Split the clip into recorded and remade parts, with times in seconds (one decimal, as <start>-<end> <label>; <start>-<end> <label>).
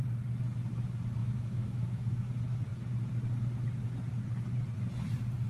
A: 0.0-1.2 recorded; 1.2-2.3 remade; 2.3-5.5 recorded